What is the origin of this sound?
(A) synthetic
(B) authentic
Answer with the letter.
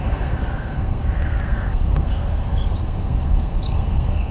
A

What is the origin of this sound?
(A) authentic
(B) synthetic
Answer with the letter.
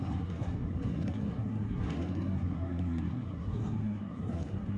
B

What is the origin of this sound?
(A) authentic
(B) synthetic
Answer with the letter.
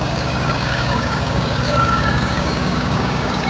B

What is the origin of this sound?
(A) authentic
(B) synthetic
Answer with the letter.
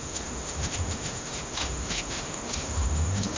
B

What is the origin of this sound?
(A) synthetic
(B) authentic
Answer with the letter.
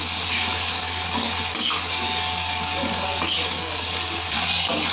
A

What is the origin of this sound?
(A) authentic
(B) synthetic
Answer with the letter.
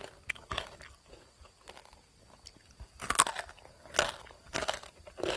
A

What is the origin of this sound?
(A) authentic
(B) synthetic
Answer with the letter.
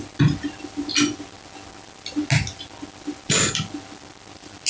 A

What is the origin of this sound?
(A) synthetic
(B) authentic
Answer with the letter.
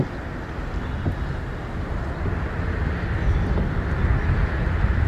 B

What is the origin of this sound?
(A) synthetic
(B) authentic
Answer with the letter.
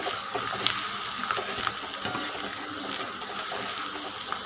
B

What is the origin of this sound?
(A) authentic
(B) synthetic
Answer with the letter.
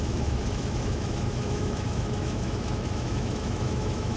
B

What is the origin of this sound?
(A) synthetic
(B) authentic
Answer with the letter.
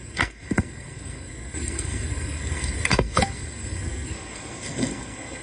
A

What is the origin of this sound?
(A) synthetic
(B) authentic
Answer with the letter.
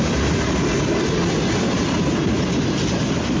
B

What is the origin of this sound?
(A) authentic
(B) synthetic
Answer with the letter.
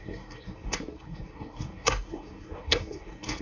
B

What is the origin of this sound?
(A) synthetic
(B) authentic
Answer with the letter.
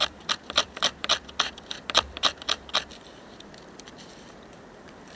A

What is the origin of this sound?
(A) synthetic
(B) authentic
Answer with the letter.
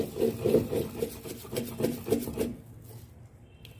B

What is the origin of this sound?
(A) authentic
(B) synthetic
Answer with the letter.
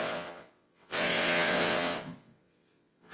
B